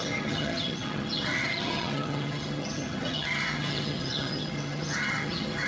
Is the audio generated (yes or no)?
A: yes